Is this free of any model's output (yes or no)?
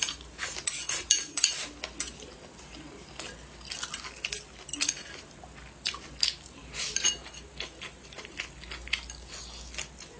yes